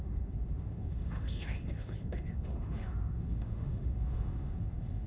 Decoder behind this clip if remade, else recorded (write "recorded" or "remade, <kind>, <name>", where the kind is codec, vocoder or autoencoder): remade, autoencoder, DAC-VAE